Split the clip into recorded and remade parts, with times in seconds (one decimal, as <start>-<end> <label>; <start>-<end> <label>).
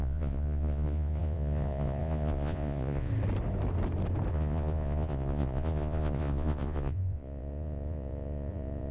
0.0-3.1 remade; 3.1-4.3 recorded; 4.3-8.9 remade